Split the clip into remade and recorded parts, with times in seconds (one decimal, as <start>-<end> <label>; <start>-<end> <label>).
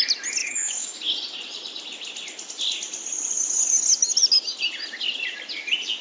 0.0-0.4 recorded; 0.4-1.0 remade; 1.0-6.0 recorded